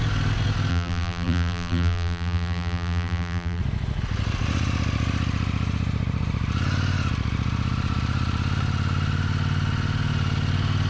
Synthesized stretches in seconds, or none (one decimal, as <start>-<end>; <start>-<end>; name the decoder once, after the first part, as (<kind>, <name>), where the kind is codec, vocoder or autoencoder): 0.7-3.6 (vocoder, BigVGAN v2)